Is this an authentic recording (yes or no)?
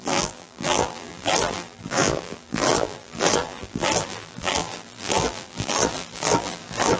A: no